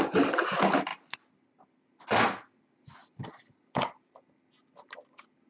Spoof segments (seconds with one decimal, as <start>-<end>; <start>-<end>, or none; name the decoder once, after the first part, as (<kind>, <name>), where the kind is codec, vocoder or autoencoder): 0.9-2.0 (vocoder, BigVGAN v2); 3.0-3.6